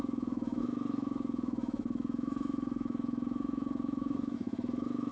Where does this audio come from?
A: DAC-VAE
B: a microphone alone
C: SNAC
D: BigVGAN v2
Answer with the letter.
A